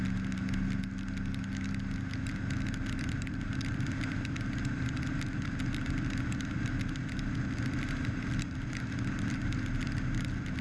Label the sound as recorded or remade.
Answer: recorded